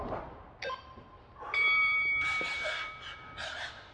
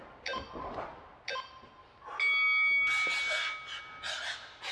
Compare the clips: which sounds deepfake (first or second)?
first